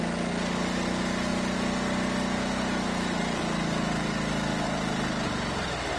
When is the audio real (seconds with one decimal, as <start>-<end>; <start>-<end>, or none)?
0.0-6.0